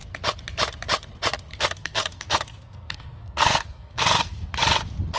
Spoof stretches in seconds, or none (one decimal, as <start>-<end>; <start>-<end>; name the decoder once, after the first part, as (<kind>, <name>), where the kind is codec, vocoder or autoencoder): 1.5-4.5 (codec, SNAC)